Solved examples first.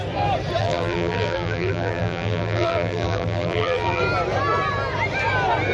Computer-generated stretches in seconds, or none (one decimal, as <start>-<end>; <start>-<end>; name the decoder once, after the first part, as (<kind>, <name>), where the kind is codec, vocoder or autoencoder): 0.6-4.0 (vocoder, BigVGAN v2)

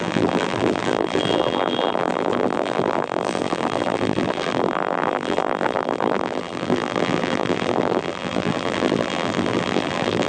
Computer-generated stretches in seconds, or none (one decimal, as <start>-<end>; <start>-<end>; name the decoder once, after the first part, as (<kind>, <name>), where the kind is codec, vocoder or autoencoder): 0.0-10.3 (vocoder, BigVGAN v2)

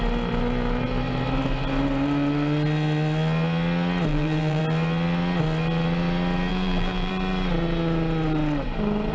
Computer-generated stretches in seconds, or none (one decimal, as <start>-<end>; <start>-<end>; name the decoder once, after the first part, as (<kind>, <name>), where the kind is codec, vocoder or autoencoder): 4.1-4.6 (vocoder, BigVGAN v2); 6.5-7.1

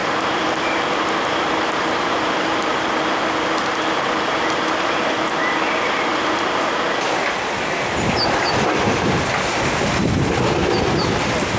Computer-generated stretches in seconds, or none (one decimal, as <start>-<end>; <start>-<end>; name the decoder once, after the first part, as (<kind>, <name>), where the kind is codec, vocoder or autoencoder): 0.0-5.0 (vocoder, BigVGAN v2); 6.1-6.6

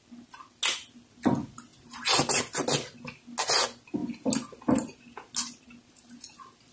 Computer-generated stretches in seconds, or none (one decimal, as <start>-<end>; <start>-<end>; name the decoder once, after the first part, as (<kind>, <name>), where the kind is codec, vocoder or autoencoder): none